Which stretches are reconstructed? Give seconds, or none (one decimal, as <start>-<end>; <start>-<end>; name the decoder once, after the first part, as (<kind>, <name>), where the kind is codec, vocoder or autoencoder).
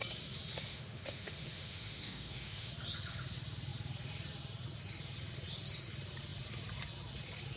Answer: 0.7-2.7 (autoencoder, DAC-VAE)